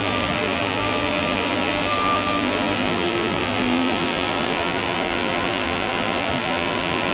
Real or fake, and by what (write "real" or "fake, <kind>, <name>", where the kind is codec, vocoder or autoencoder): fake, vocoder, BigVGAN v2